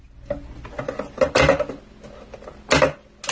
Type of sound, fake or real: real